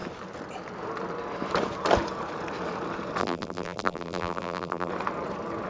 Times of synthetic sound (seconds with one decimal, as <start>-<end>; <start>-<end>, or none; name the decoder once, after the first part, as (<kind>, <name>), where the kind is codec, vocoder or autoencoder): 3.2-4.9 (vocoder, BigVGAN v2)